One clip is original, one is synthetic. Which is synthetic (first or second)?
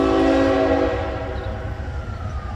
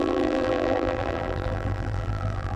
second